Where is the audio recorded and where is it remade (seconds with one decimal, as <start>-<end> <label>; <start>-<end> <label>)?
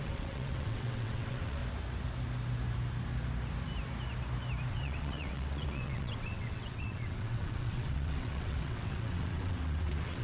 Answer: 0.0-1.6 remade; 1.6-4.7 recorded; 4.7-10.2 remade